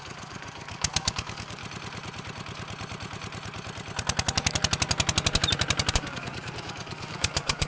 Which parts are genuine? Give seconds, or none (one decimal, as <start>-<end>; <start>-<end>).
1.6-5.9